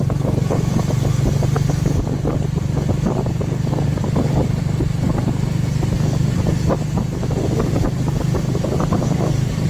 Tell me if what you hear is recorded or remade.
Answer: recorded